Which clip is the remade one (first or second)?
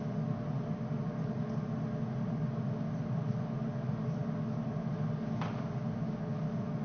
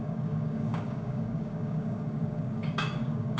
second